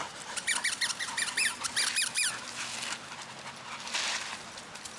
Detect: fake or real fake